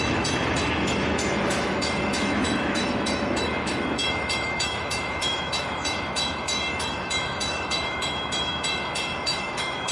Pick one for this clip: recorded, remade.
remade